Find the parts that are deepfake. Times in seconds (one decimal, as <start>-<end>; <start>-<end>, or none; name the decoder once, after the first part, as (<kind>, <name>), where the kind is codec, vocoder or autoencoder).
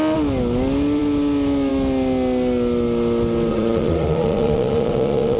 3.5-5.4 (vocoder, Vocos)